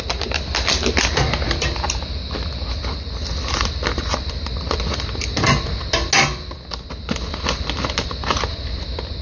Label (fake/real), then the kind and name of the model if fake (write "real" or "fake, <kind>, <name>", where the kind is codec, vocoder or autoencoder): real